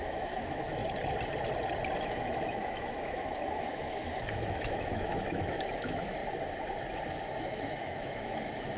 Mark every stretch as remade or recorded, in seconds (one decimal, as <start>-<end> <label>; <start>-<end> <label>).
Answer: 0.0-0.8 remade; 0.8-2.0 recorded; 2.0-6.2 remade; 6.2-7.4 recorded; 7.4-8.8 remade